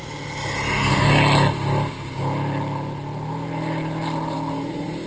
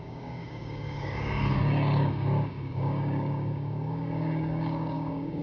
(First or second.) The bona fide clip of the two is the first